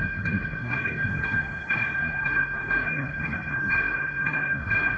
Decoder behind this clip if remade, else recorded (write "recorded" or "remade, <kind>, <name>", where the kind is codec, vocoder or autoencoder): remade, codec, SNAC